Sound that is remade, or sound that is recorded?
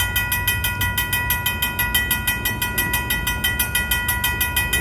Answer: recorded